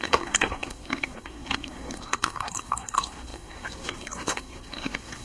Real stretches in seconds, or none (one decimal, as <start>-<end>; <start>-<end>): none